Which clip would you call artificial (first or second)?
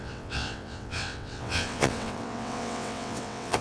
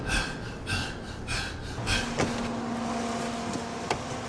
first